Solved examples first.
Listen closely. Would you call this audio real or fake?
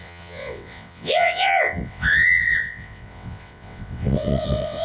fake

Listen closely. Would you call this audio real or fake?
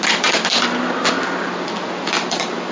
real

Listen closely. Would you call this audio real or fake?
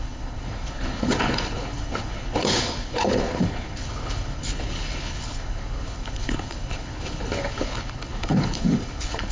fake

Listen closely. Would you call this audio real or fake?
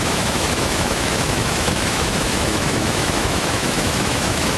fake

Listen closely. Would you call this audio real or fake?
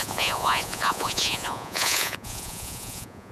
fake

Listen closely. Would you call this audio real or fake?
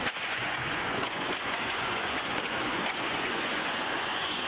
fake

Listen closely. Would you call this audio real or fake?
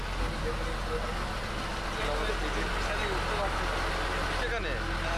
real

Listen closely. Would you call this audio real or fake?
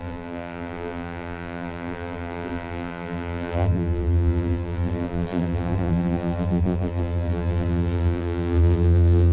fake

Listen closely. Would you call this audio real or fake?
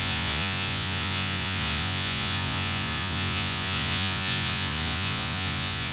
fake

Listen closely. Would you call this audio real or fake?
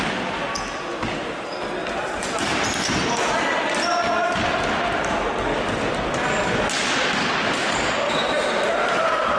real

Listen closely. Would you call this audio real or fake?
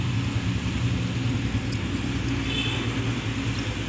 real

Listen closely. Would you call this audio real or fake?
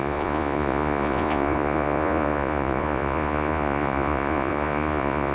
fake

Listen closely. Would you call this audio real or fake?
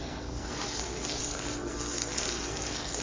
fake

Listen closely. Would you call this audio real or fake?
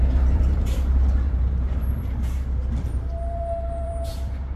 fake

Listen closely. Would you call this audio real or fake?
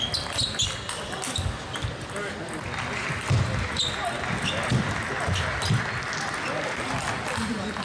real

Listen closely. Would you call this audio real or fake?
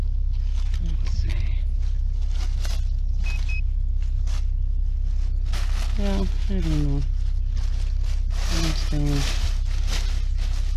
real